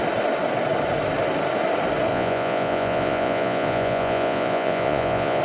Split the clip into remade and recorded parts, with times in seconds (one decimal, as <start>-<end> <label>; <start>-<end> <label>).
0.0-2.1 recorded; 2.1-5.4 remade